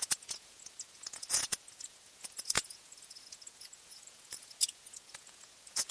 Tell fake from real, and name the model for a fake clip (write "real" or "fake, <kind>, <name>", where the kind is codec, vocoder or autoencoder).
fake, vocoder, Vocos